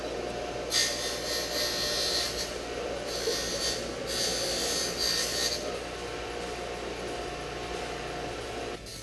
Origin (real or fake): real